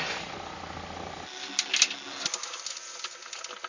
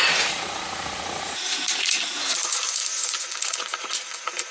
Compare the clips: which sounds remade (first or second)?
second